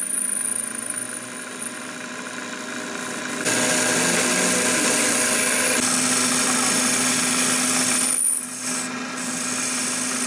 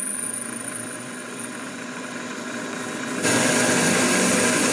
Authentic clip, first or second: first